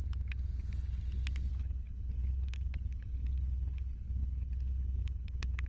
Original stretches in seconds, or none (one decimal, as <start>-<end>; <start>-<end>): 0.0-1.5